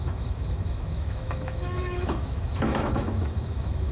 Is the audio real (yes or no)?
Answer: no